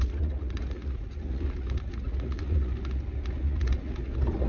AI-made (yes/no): yes